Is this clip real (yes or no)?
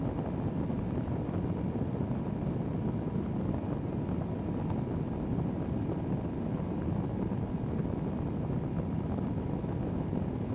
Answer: yes